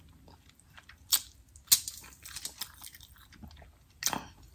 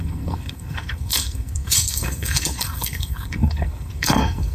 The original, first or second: first